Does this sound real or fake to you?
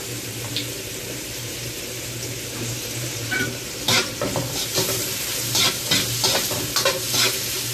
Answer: fake